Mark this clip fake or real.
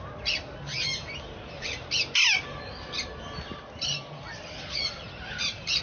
real